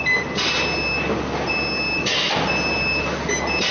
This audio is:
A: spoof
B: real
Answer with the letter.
B